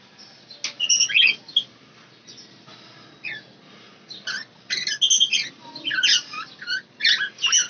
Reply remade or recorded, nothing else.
recorded